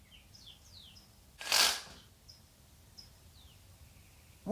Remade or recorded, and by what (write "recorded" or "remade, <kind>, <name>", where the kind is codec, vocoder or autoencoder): recorded